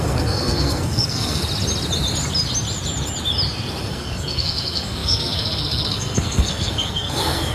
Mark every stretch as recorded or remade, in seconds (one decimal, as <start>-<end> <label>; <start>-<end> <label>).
0.0-1.4 remade; 1.4-3.8 recorded; 3.8-7.5 remade